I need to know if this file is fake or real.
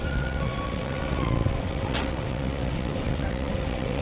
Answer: fake